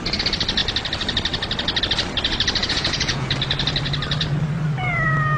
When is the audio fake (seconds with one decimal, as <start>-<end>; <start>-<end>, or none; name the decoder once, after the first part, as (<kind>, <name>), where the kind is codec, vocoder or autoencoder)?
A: 2.6-3.3 (vocoder, Vocos)